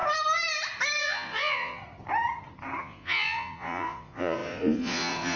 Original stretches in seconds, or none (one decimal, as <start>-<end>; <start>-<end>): 0.0-1.0; 1.8-2.8

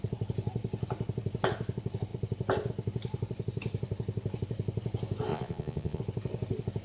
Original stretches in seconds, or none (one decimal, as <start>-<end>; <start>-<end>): 0.0-5.3; 6.0-6.8

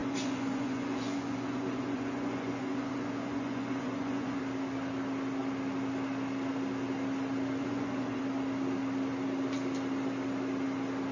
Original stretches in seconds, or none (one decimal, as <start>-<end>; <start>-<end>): 4.4-7.6; 8.2-11.1

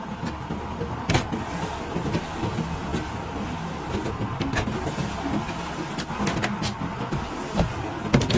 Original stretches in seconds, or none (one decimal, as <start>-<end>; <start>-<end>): 0.0-8.4

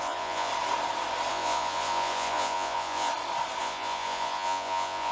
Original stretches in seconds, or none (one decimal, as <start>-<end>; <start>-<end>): 0.5-1.3; 3.1-3.6

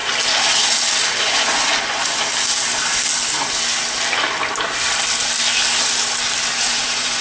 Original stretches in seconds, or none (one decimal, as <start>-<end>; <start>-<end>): 0.0-1.2; 2.3-6.6